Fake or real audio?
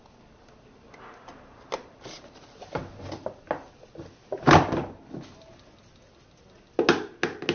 real